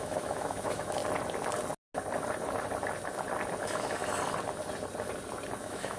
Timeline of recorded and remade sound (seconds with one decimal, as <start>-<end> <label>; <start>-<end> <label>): 0.0-1.0 remade; 1.0-3.6 recorded; 3.6-4.0 remade; 4.0-5.6 recorded; 5.6-6.0 remade